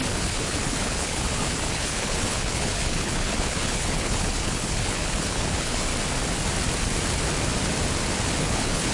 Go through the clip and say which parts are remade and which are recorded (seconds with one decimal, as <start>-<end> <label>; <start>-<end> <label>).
0.0-5.9 remade; 5.9-8.4 recorded; 8.4-8.9 remade